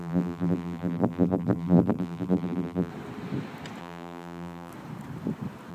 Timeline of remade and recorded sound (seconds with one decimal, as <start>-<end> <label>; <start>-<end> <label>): 0.0-2.9 remade; 2.9-3.8 recorded; 3.8-4.7 remade; 4.7-5.7 recorded